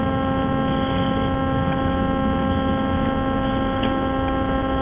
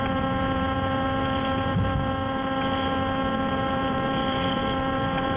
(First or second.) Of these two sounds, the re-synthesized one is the second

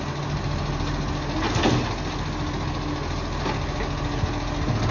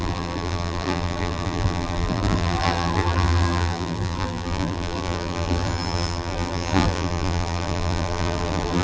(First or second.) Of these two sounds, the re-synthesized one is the second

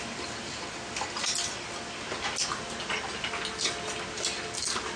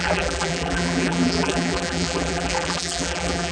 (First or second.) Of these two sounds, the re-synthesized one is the second